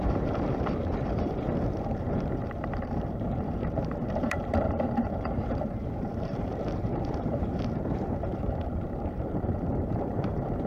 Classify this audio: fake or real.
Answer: fake